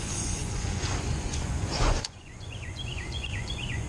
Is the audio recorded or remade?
remade